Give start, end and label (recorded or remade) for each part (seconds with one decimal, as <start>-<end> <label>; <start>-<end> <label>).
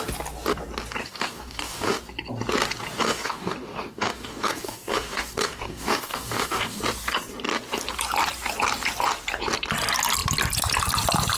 0.0-1.0 recorded; 1.0-2.0 remade; 2.0-3.0 recorded; 3.0-6.8 remade; 6.8-11.4 recorded